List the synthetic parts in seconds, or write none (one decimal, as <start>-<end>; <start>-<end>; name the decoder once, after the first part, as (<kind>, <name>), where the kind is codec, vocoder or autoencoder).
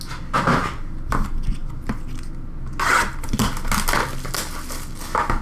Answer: none